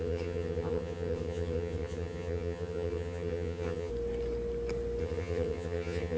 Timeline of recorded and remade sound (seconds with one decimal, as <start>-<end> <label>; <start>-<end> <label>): 0.0-3.9 remade; 3.9-5.0 recorded; 5.0-6.2 remade